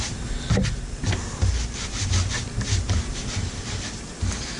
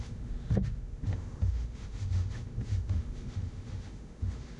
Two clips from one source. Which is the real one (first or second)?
first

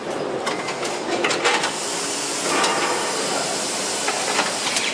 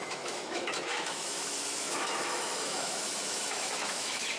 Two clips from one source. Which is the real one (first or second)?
first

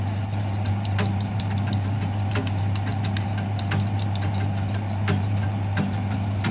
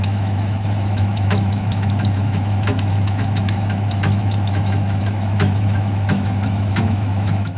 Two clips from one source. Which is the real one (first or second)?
first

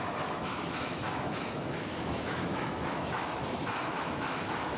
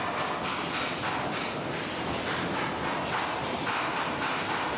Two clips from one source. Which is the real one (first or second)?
second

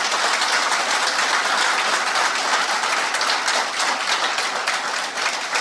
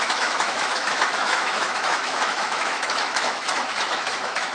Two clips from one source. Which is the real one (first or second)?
first